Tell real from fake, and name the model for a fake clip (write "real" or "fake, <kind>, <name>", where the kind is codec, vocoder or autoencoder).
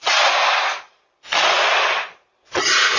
real